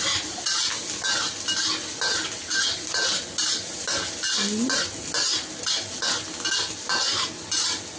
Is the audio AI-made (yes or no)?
no